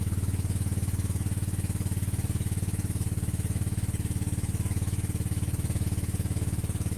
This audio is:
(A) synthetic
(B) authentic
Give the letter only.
A